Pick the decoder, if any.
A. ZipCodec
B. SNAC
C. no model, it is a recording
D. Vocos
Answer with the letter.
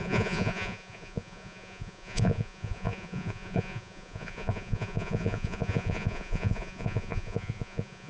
D